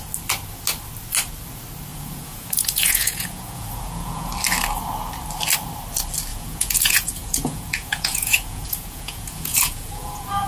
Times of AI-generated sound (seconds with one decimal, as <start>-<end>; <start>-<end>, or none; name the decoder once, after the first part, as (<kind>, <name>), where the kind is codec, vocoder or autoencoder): 1.9-4.3 (vocoder, Vocos); 6.3-10.5